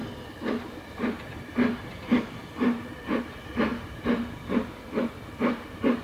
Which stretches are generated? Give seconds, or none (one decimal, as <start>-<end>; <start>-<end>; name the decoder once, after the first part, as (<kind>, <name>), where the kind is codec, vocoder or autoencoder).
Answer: none